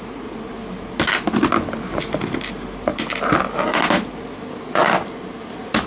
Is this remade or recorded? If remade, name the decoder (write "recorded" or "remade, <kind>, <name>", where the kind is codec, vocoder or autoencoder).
recorded